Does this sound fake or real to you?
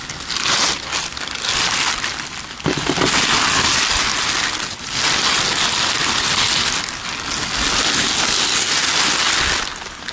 real